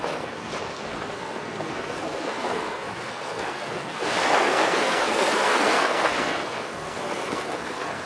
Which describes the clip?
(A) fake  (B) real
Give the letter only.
A